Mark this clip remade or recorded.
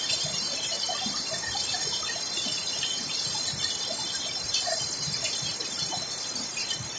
remade